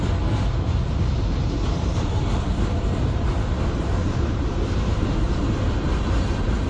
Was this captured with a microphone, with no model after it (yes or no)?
no